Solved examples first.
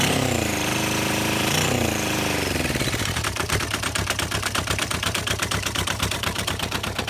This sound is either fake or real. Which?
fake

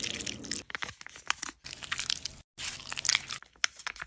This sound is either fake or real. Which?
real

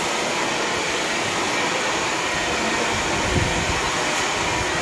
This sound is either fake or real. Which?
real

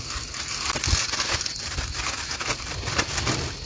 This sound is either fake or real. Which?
real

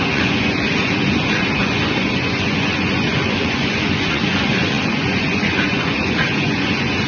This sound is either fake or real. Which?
fake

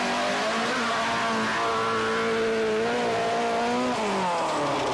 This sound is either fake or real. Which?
real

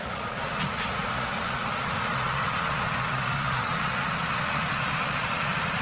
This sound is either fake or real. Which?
fake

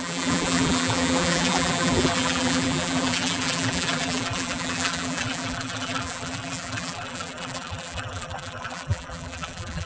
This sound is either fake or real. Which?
fake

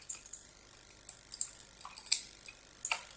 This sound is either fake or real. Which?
real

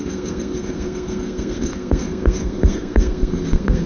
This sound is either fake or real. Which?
fake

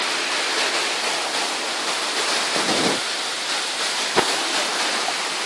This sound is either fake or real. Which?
real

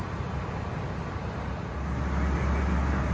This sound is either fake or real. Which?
real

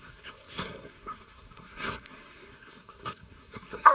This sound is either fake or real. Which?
fake